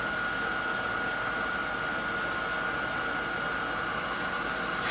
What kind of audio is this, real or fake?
real